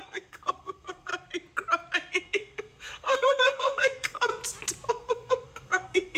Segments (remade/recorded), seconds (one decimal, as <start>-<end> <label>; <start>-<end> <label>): 0.0-1.1 remade; 1.1-2.2 recorded; 2.2-4.3 remade; 4.3-4.9 recorded; 4.9-6.2 remade